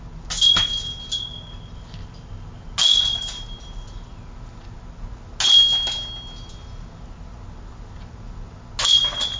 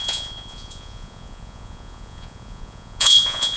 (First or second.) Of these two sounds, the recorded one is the first